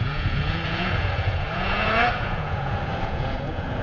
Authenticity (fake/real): fake